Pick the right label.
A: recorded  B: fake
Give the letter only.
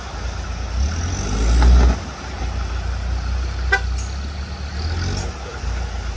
A